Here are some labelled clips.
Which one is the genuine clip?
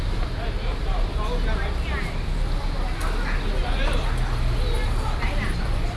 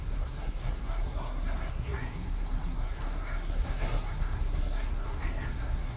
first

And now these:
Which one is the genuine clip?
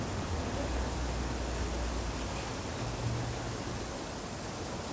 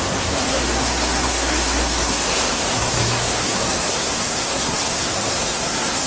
first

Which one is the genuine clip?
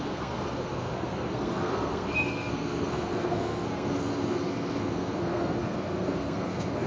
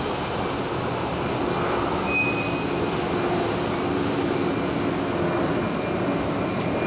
second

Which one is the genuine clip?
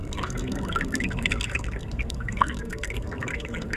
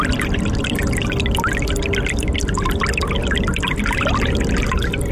second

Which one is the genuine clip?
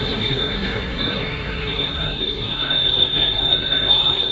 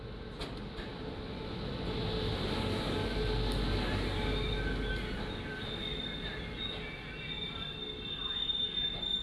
second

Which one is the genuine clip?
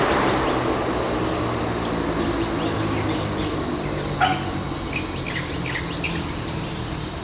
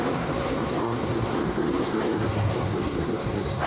first